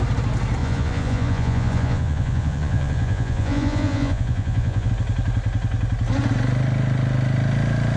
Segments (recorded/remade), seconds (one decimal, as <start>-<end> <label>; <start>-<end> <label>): 0.0-0.6 recorded; 0.6-4.9 remade; 4.9-8.0 recorded